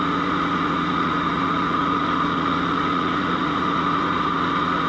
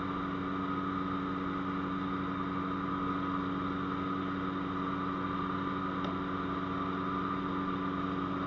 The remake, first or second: first